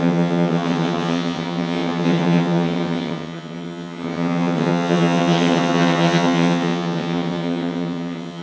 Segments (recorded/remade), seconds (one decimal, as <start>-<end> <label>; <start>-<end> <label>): 0.0-8.4 remade

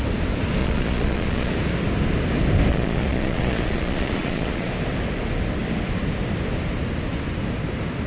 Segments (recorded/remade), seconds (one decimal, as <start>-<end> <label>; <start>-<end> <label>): 0.0-0.6 recorded; 0.6-1.5 remade; 1.5-2.7 recorded; 2.7-4.7 remade; 4.7-8.1 recorded

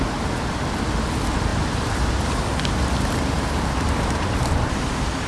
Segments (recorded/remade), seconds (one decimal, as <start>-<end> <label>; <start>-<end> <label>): 0.0-1.5 recorded; 1.5-4.5 remade; 4.5-5.3 recorded

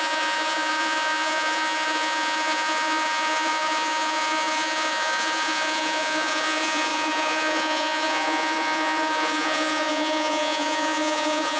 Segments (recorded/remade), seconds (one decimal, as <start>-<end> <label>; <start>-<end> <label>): 0.0-11.6 remade

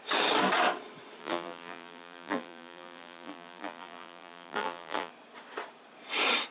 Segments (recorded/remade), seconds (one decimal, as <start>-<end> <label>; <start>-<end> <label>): 0.0-1.2 recorded; 1.2-5.1 remade; 5.1-6.5 recorded

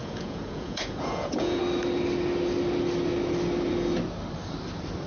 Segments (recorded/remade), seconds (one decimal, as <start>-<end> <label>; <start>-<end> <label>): 0.0-1.6 remade; 1.6-5.1 recorded

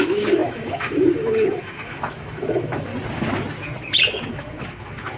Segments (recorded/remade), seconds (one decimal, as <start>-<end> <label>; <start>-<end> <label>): 0.0-2.9 remade; 2.9-4.3 recorded; 4.3-5.2 remade